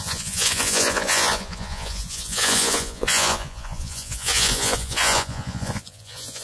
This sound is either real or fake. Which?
fake